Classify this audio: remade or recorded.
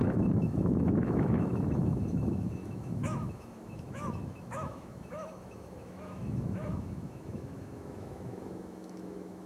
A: remade